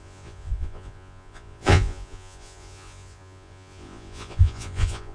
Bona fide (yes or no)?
no